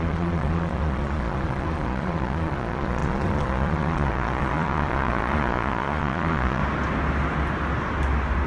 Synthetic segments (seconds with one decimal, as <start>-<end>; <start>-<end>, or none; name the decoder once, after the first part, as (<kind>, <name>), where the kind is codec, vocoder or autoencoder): 0.0-6.6 (vocoder, Vocos)